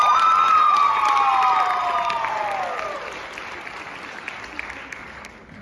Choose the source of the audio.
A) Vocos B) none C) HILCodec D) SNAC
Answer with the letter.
B